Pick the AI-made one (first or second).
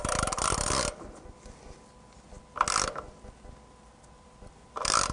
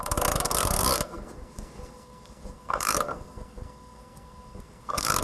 second